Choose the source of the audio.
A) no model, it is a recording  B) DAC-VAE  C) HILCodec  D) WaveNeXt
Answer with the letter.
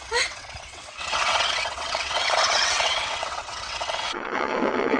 D